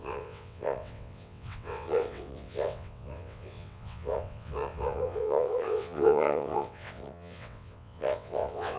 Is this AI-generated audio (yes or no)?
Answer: yes